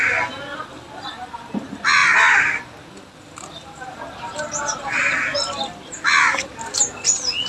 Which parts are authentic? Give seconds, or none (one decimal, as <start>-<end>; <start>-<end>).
0.0-7.5